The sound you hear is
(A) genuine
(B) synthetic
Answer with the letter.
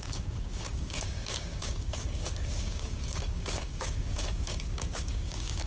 B